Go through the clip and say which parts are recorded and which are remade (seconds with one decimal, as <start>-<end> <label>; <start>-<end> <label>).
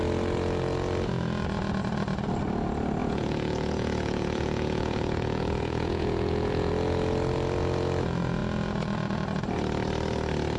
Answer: 0.0-3.0 recorded; 3.0-6.7 remade; 6.7-10.6 recorded